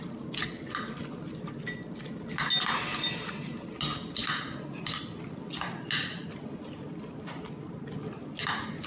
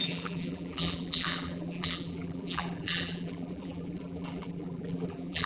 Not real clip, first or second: second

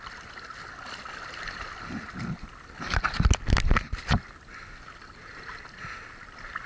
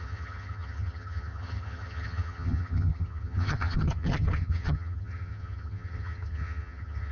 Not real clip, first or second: second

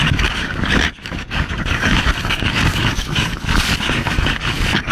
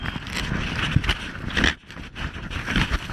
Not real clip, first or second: first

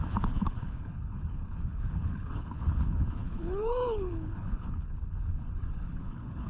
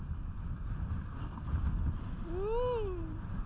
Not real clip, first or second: first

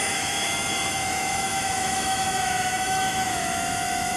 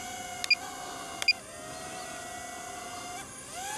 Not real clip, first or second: first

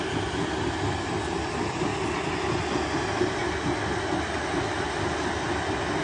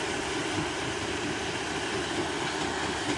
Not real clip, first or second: second